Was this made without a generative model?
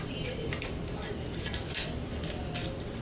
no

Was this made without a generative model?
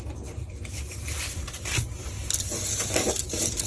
yes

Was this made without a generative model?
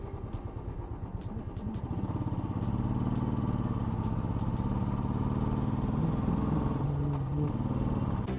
yes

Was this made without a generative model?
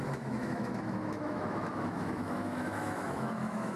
no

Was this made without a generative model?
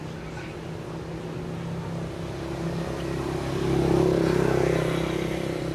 yes